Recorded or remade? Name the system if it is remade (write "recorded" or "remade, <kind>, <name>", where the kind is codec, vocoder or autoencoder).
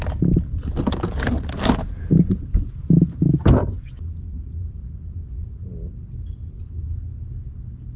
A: recorded